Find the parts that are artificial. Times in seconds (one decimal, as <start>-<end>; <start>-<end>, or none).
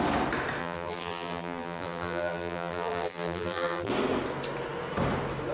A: 0.6-3.9